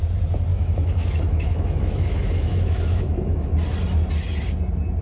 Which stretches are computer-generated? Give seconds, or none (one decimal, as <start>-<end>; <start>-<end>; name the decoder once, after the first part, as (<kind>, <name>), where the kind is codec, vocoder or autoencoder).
0.5-3.5 (autoencoder, DAC-VAE)